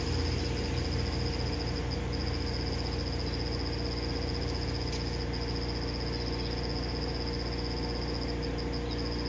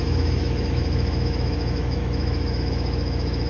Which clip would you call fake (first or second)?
second